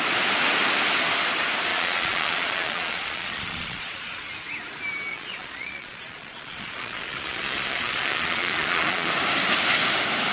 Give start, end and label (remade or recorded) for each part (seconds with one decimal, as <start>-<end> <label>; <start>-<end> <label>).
0.0-1.7 recorded; 1.7-4.3 remade; 4.3-5.1 recorded; 5.1-9.1 remade; 9.1-10.3 recorded